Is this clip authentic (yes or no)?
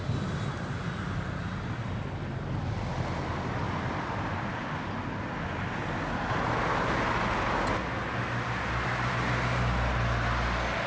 yes